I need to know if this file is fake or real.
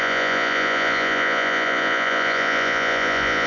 fake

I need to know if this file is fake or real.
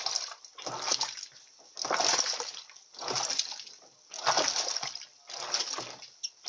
real